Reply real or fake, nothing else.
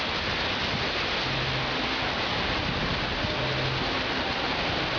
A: real